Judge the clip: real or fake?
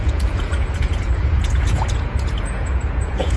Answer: fake